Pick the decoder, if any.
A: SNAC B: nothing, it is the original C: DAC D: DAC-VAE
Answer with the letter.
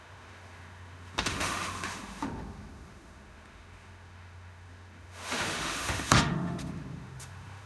D